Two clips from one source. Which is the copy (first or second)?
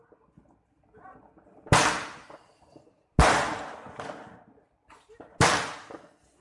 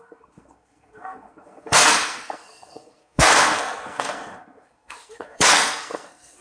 second